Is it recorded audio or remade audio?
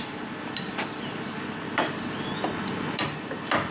remade